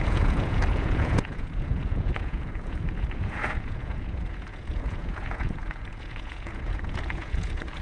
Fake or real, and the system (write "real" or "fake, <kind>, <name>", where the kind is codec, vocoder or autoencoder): fake, vocoder, Vocos